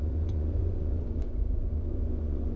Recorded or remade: remade